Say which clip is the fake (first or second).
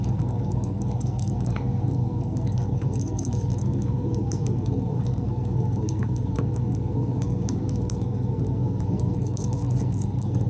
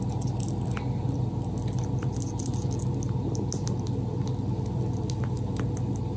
first